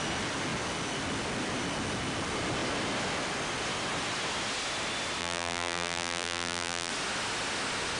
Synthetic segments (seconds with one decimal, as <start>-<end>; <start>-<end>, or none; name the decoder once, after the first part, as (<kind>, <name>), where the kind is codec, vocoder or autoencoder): 5.2-6.9 (vocoder, BigVGAN v2)